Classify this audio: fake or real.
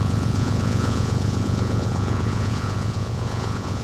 fake